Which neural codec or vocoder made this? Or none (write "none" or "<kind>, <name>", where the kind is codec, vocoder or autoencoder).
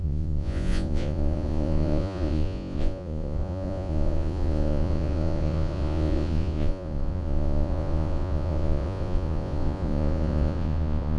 vocoder, Vocos